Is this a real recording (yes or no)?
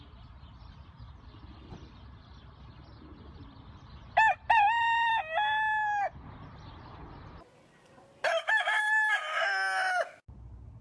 yes